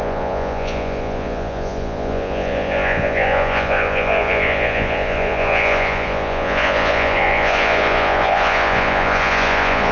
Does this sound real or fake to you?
fake